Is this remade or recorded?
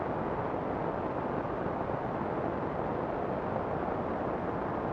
recorded